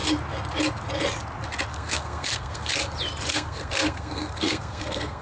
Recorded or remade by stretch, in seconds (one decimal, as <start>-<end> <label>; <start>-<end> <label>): 0.0-1.7 recorded; 1.7-2.7 remade; 2.7-3.3 recorded; 3.3-5.2 remade